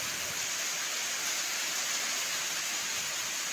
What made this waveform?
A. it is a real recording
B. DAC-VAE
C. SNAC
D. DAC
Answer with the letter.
A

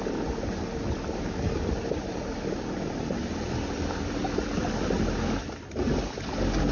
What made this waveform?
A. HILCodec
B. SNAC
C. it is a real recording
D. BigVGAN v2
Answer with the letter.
C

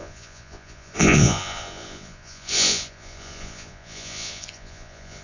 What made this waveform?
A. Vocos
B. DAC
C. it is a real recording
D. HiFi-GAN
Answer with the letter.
A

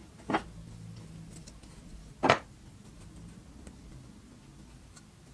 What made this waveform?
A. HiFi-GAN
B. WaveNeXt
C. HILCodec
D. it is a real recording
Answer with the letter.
D